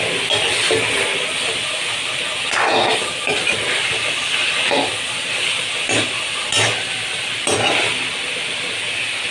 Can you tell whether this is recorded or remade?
recorded